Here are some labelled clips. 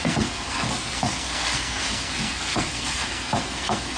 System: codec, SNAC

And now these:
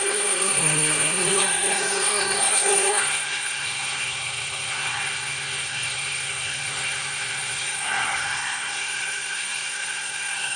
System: codec, SNAC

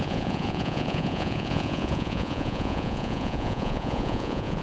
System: vocoder, Vocos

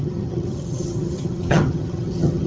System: vocoder, HiFi-GAN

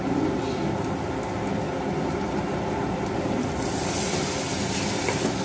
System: none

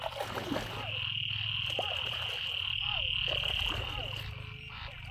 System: none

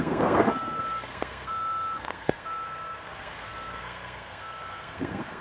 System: codec, SNAC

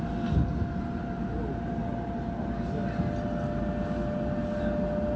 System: none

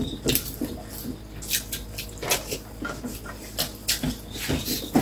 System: none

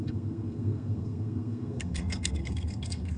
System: codec, SNAC